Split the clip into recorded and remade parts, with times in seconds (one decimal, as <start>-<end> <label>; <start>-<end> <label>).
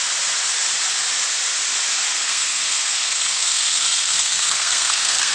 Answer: 0.0-2.1 recorded; 2.1-5.3 remade